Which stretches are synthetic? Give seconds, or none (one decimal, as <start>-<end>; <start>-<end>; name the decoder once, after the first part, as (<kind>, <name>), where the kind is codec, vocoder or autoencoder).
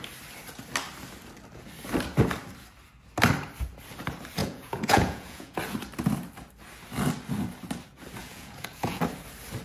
4.4-5.6 (vocoder, Vocos); 8.2-9.0